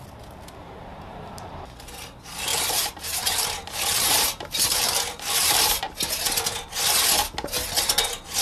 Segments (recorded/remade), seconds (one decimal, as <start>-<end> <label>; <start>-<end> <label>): 0.0-0.6 recorded; 0.6-1.5 remade; 1.5-2.5 recorded; 2.5-3.5 remade; 3.5-3.9 recorded; 3.9-5.8 remade; 5.8-8.4 recorded